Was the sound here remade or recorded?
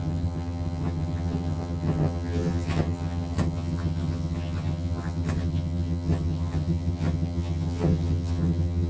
remade